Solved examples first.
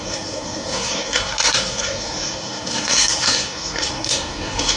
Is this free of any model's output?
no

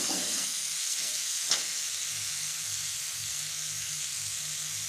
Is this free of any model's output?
no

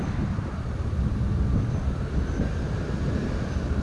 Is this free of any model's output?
yes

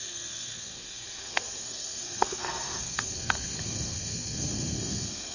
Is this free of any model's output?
no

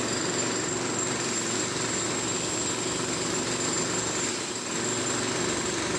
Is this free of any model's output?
yes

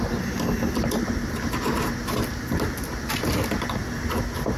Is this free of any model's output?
yes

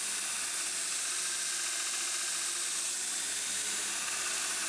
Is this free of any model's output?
yes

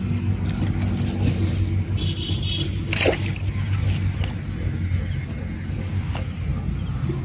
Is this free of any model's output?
yes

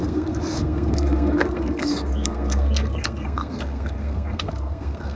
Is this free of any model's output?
no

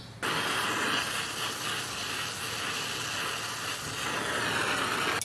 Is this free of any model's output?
yes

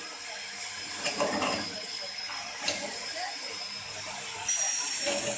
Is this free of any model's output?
yes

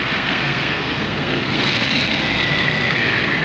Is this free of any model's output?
no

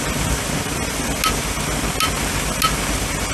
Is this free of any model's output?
yes